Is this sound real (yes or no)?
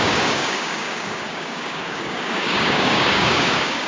no